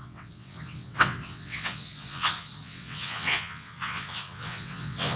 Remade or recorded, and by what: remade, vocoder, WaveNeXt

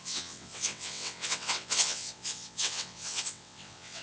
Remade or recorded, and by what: remade, vocoder, WaveNeXt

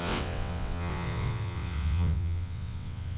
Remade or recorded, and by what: remade, vocoder, WaveNeXt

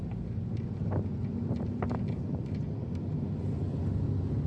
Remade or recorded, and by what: recorded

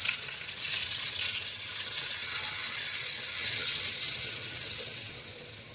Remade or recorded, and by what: remade, vocoder, WaveNeXt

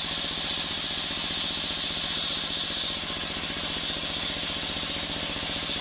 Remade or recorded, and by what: recorded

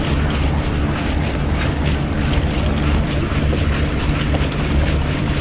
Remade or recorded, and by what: recorded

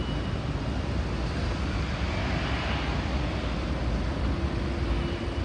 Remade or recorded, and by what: recorded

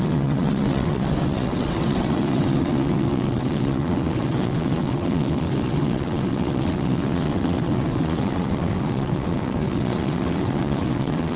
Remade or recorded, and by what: remade, vocoder, WaveNeXt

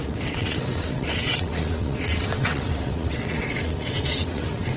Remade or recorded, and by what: remade, vocoder, WaveNeXt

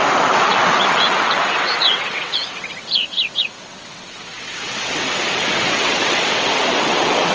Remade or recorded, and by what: remade, vocoder, WaveNeXt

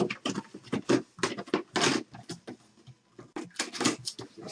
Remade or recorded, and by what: recorded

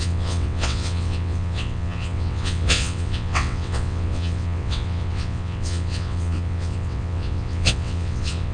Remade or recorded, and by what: remade, vocoder, WaveNeXt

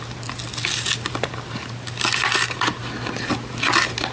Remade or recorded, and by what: recorded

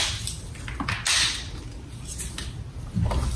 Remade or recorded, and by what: recorded